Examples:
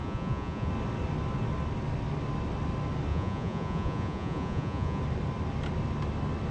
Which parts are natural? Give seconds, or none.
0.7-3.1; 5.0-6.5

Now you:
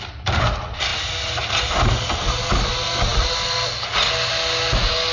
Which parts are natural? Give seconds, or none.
0.0-5.1